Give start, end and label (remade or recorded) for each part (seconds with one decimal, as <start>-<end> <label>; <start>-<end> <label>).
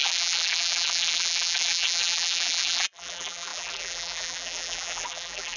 0.0-5.6 remade